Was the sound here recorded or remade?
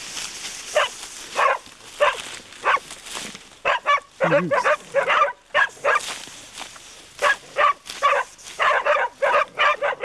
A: recorded